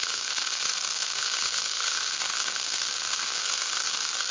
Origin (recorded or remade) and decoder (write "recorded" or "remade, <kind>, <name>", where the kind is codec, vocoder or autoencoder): remade, codec, SNAC